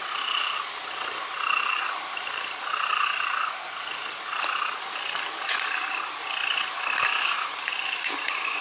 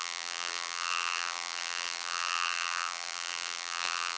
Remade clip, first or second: second